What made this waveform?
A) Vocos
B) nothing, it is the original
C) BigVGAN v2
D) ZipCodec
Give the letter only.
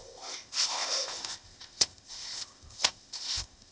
D